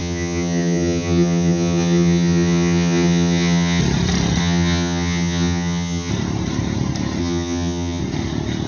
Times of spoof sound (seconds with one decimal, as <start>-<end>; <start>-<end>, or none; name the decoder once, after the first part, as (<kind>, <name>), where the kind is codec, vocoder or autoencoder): 0.0-3.8 (vocoder, HiFi-GAN); 4.4-6.1; 7.2-8.0